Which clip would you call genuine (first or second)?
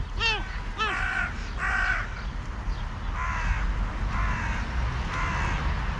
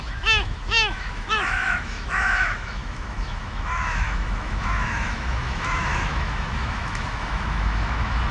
first